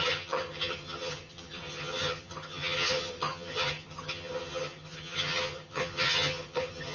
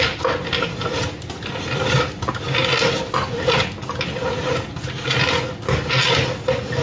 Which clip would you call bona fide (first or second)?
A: second